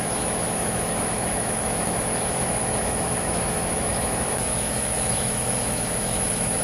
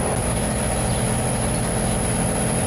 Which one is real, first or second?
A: second